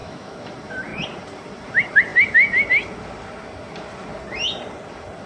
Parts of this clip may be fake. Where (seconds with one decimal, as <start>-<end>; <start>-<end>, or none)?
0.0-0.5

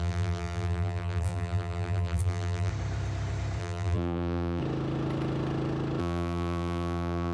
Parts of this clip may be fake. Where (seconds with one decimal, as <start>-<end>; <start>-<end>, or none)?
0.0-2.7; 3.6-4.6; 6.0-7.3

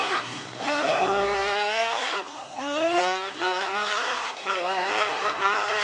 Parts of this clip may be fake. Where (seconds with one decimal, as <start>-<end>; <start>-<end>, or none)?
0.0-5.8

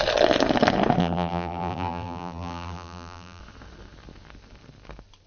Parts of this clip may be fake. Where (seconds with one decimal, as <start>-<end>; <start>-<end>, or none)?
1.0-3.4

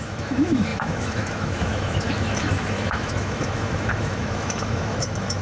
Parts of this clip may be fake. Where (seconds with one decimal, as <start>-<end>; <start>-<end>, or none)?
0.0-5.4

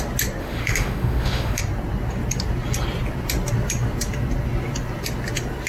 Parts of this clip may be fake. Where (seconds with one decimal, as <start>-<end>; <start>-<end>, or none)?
0.4-1.6

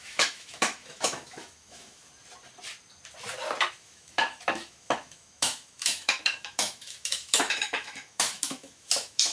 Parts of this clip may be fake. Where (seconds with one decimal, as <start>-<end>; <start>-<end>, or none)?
0.0-2.1; 3.7-9.3